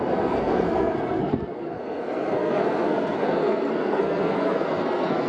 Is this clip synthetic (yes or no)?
yes